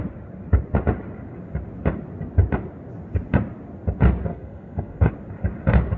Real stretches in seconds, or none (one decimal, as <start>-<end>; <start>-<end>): 0.0-4.3; 5.1-6.0